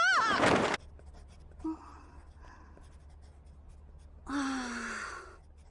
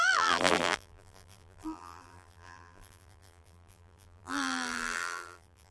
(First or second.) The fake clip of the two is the second